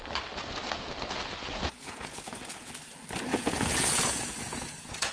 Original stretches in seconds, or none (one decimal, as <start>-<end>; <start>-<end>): 0.0-1.4; 2.7-3.3